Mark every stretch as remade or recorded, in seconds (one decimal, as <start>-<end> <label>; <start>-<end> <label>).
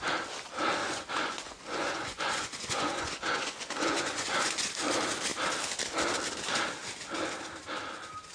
0.0-0.8 recorded; 0.8-4.7 remade; 4.7-8.3 recorded